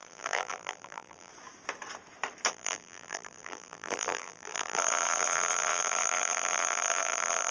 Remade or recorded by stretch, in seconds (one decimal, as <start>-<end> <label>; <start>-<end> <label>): 0.0-1.3 remade; 1.3-2.5 recorded; 2.5-7.5 remade